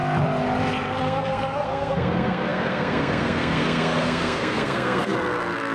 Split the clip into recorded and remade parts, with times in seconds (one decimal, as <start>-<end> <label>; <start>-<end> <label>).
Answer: 0.0-1.0 recorded; 1.0-5.7 remade